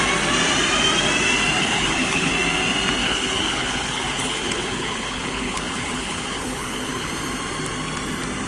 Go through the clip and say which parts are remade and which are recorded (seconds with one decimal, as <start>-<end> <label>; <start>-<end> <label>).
0.0-1.6 recorded; 1.6-2.3 remade; 2.3-3.0 recorded; 3.0-7.1 remade; 7.1-8.5 recorded